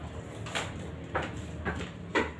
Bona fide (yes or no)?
yes